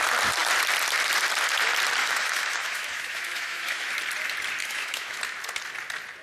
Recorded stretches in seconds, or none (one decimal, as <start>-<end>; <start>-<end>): 0.0-2.0; 3.9-4.6; 5.2-6.2